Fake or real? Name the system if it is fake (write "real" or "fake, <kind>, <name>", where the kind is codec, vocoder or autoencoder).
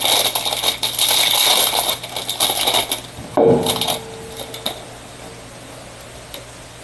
real